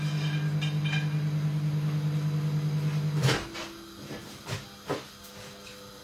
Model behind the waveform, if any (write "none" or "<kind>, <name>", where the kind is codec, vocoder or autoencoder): none